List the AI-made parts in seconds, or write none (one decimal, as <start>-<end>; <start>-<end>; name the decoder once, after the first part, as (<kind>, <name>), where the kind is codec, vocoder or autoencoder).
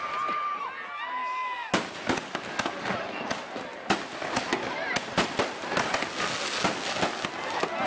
none